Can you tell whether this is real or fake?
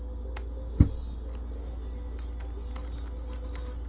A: real